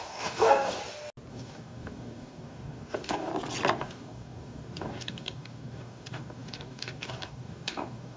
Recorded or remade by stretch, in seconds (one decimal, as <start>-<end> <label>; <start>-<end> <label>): 0.0-0.8 remade; 0.8-1.3 recorded; 1.3-3.3 remade; 3.3-3.8 recorded; 3.8-8.2 remade